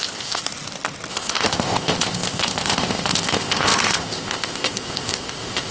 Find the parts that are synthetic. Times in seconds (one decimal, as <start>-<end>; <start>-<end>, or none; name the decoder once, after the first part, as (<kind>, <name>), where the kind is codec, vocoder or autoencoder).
0.0-0.4 (codec, ZipCodec); 1.1-5.7